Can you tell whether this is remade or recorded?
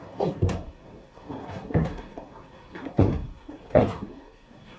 remade